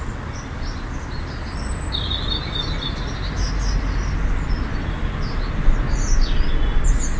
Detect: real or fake real